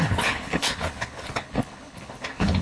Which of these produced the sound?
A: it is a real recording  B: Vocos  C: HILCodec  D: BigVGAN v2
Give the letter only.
C